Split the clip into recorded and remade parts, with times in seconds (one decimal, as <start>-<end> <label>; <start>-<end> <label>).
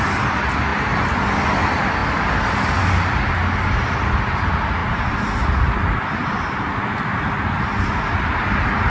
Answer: 0.0-8.9 recorded